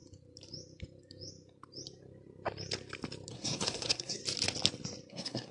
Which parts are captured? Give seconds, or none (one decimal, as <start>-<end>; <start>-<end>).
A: 0.0-3.3; 4.2-5.1